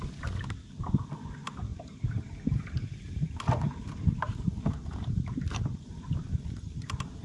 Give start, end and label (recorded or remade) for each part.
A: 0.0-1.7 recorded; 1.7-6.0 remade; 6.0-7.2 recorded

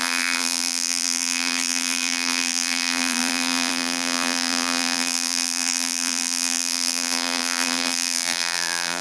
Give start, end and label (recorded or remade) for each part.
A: 0.0-9.0 remade